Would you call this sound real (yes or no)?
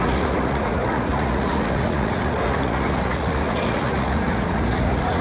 no